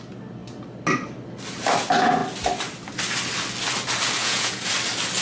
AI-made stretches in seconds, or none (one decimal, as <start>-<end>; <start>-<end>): 4.2-4.7